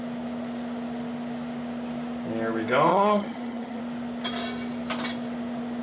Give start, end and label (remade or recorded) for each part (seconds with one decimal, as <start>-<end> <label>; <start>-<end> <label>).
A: 0.0-2.9 recorded; 2.9-3.8 remade; 3.8-5.8 recorded